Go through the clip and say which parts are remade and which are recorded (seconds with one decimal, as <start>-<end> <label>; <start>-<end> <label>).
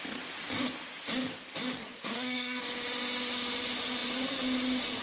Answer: 0.0-1.8 recorded; 1.8-2.6 remade; 2.6-5.0 recorded